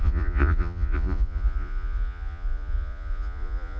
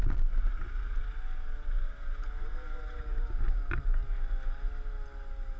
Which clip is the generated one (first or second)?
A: first